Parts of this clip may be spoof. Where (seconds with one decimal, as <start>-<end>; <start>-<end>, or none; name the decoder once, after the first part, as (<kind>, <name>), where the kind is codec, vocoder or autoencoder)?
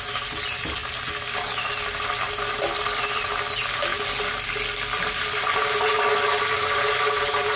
none